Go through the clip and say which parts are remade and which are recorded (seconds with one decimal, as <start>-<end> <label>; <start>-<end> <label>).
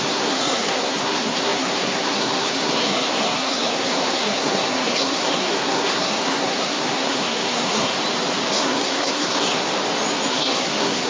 0.0-7.9 remade; 7.9-8.5 recorded; 8.5-9.7 remade; 9.7-10.3 recorded; 10.3-11.1 remade